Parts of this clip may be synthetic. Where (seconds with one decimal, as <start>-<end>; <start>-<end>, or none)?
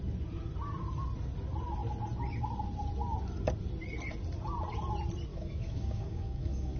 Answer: 5.3-6.8